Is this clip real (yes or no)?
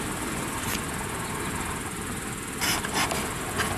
yes